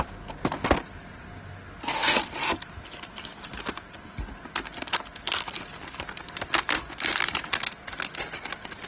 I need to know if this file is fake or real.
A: real